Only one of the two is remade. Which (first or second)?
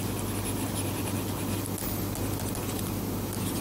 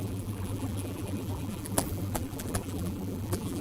second